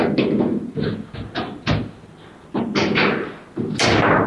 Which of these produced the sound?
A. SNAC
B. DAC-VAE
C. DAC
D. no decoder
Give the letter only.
D